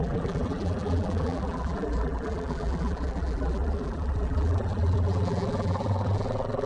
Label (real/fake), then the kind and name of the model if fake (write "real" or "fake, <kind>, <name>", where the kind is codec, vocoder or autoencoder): fake, vocoder, BigVGAN v2